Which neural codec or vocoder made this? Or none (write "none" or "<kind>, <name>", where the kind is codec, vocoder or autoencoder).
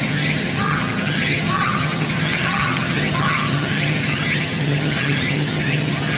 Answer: vocoder, HiFi-GAN